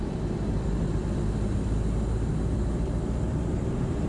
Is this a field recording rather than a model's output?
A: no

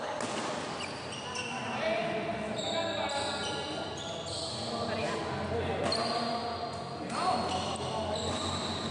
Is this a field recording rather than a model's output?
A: yes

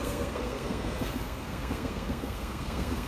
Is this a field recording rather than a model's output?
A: no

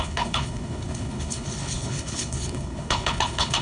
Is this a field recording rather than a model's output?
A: no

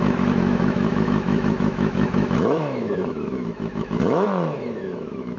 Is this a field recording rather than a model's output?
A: no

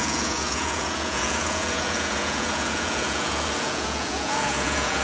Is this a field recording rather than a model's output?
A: no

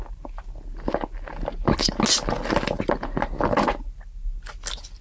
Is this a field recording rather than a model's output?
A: yes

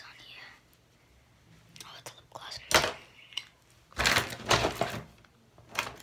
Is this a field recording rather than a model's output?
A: yes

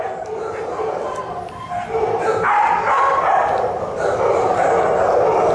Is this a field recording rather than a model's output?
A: yes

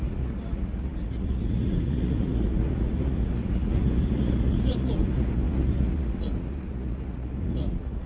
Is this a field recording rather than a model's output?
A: no